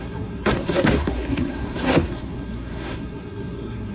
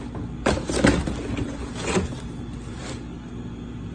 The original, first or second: second